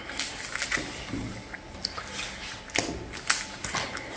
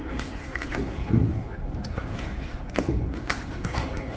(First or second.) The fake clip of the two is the second